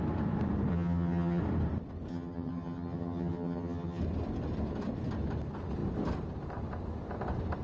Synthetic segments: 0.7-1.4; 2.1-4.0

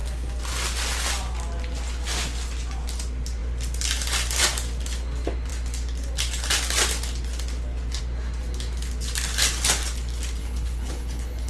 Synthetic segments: 10.4-11.5

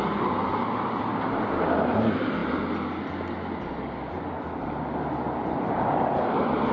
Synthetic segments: none

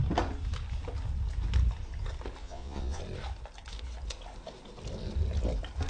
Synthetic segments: 2.4-3.0